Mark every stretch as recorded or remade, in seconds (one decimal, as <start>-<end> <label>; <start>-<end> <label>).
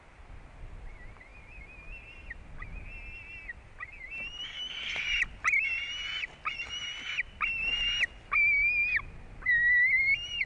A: 0.0-10.5 recorded